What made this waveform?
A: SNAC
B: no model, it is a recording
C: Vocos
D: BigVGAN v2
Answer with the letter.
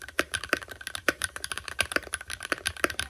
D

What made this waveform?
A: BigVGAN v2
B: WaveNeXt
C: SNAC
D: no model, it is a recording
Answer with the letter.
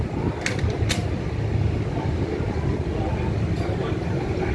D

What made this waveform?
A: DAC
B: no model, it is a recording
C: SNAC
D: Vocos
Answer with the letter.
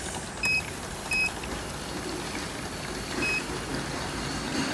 B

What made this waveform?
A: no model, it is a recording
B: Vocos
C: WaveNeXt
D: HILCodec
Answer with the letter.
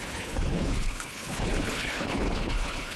D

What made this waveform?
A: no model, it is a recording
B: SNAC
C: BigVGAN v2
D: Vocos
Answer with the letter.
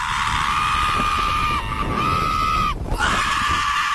A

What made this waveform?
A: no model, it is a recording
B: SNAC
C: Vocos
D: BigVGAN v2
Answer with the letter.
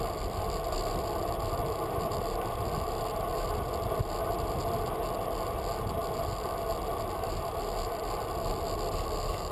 A